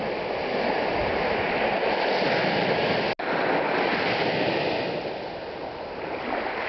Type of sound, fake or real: real